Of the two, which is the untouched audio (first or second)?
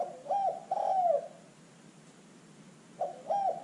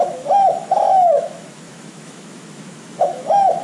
first